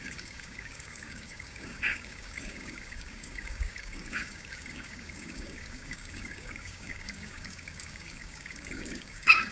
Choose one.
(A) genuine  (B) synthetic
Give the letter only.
B